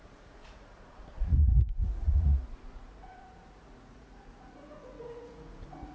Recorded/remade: remade